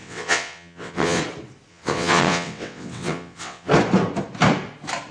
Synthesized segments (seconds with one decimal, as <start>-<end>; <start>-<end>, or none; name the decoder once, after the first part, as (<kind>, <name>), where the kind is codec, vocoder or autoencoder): 0.0-1.2 (vocoder, WaveNeXt); 1.7-3.7